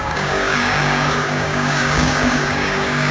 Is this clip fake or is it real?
fake